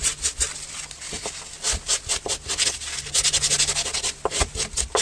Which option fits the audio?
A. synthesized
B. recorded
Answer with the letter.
B